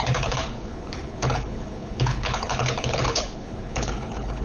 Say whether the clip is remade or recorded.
remade